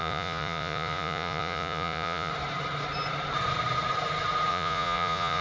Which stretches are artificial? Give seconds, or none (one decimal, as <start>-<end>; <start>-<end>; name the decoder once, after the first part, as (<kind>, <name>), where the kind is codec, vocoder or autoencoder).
0.0-2.3 (vocoder, Vocos); 4.5-5.4